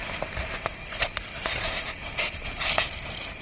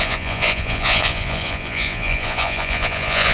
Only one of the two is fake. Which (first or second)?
second